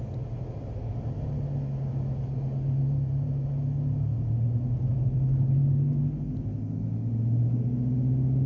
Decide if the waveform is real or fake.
real